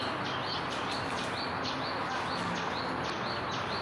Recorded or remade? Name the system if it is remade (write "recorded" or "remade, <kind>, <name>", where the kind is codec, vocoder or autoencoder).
recorded